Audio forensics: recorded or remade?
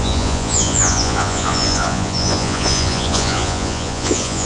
remade